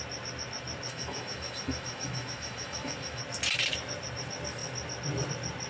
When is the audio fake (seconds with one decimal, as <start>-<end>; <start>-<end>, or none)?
0.9-3.2